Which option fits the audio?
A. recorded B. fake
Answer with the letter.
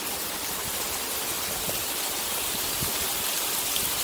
A